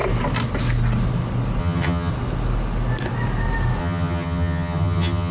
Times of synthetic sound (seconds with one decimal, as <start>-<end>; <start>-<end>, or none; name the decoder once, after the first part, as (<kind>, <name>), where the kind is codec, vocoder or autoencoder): 1.6-2.1 (vocoder, HiFi-GAN); 3.8-5.3